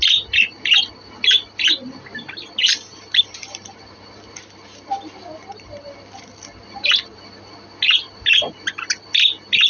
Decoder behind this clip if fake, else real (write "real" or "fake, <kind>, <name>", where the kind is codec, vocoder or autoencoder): real